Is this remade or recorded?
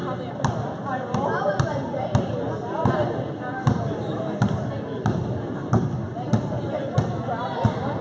recorded